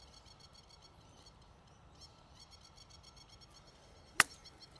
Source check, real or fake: real